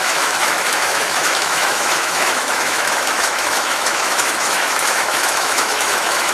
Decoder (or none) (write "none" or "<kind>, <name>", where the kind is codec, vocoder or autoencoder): autoencoder, DAC-VAE